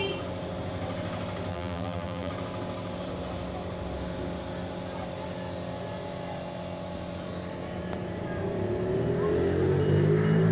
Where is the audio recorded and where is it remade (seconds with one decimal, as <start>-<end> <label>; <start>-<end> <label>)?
0.0-1.5 recorded; 1.5-2.3 remade; 2.3-10.5 recorded